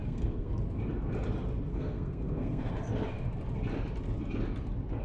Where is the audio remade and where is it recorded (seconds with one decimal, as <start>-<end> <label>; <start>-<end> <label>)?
0.0-0.5 remade; 0.5-1.7 recorded; 1.7-2.7 remade; 2.7-5.0 recorded